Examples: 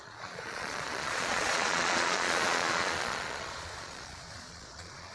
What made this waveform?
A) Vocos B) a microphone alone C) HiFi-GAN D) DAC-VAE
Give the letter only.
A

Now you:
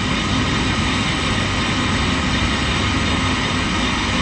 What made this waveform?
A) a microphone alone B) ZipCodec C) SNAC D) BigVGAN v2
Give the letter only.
A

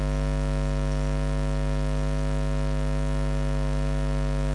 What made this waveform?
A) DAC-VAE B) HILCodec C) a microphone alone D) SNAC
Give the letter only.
C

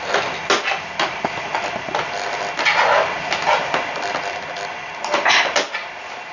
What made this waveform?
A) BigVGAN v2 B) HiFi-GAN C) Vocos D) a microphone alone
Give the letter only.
D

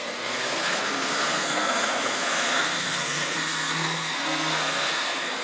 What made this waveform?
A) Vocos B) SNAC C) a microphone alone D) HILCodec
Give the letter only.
B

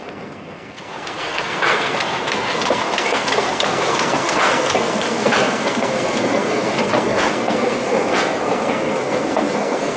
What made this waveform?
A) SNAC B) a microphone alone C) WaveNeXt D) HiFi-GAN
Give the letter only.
A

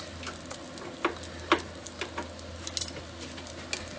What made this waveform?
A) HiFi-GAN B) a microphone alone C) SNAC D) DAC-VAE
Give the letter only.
B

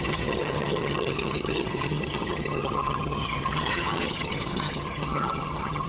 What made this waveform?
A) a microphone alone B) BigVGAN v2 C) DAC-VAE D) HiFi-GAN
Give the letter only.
D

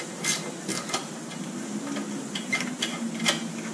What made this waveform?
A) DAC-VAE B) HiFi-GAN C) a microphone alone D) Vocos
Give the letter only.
C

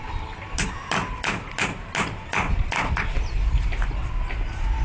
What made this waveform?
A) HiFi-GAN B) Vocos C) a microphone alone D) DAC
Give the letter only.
C